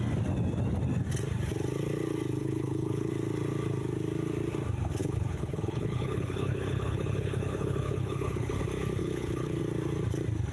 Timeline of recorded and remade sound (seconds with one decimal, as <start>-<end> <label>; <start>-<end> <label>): 0.0-2.4 recorded; 2.4-3.1 remade; 3.1-5.0 recorded; 5.0-8.6 remade; 8.6-9.0 recorded; 9.0-9.6 remade; 9.6-10.5 recorded